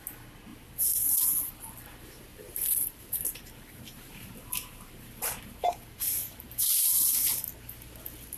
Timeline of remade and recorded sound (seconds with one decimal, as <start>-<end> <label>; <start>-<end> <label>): 0.0-0.5 recorded; 0.5-1.5 remade; 1.5-2.3 recorded; 2.3-7.3 remade; 7.3-8.4 recorded